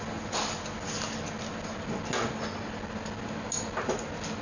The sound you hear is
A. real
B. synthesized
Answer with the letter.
A